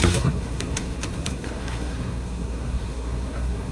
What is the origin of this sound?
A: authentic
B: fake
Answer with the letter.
B